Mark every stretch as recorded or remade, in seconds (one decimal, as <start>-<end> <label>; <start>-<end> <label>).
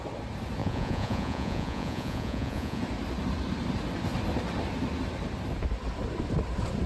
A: 0.0-0.6 recorded; 0.6-2.8 remade; 2.8-6.9 recorded